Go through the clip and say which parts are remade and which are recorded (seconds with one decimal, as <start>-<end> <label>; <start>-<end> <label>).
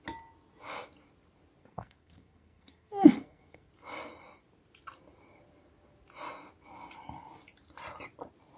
0.0-1.6 recorded; 1.6-3.7 remade; 3.7-8.6 recorded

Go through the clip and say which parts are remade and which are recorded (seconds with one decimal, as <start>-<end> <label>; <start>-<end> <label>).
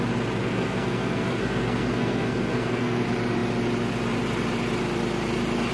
0.0-0.4 recorded; 0.4-3.0 remade; 3.0-5.7 recorded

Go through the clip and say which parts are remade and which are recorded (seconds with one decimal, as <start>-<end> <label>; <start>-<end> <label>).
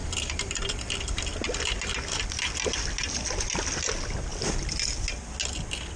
0.0-0.6 remade; 0.6-6.0 recorded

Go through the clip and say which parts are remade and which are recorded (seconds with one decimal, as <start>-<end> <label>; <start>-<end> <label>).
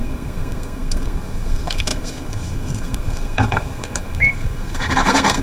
0.0-5.4 remade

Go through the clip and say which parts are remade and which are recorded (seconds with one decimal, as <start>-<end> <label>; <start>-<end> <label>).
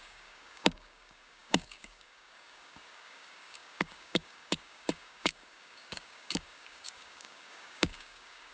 0.0-8.5 remade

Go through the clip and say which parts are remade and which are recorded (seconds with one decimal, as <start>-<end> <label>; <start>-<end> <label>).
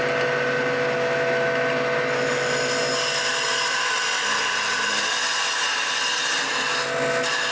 0.0-7.5 recorded